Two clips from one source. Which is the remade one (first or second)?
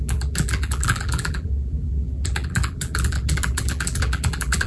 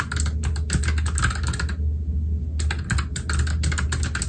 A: first